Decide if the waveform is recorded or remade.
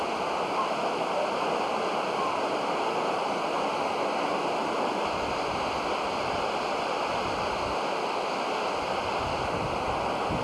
recorded